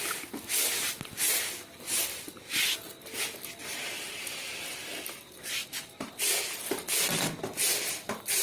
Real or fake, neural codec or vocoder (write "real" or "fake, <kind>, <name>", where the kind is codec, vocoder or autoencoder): real